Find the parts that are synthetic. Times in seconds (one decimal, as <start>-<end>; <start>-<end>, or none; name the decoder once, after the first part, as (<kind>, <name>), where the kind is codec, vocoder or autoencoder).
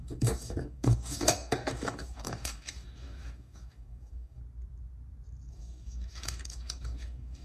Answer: 0.0-4.4 (codec, DAC); 5.5-7.4